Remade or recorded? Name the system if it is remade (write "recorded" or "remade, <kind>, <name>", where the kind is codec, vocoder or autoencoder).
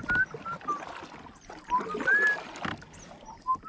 recorded